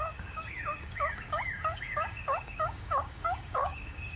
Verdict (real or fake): fake